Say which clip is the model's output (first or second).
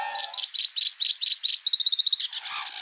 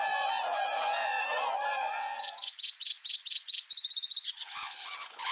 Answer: second